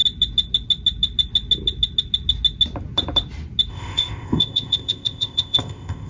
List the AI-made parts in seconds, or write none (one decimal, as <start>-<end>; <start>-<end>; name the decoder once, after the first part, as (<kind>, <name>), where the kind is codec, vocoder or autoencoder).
3.7-6.1 (codec, ZipCodec)